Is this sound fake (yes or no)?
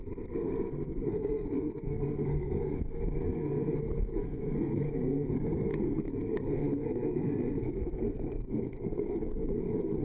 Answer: yes